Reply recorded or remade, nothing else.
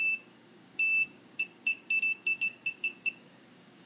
remade